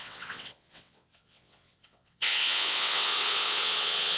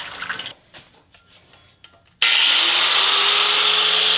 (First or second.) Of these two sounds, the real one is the second